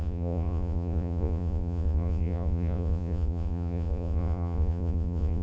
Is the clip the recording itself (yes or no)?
no